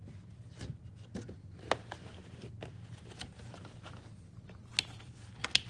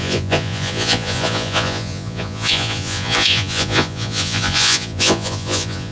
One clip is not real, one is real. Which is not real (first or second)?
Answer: second